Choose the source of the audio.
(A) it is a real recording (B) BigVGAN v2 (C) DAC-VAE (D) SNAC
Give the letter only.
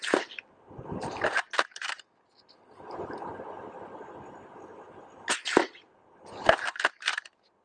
A